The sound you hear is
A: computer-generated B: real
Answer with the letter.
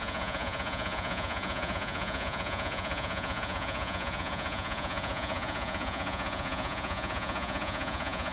A